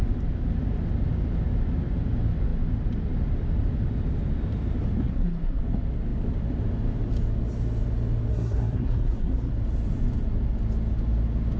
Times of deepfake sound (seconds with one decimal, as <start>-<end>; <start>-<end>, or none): 5.0-5.6; 8.3-9.5